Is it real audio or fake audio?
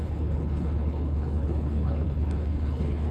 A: fake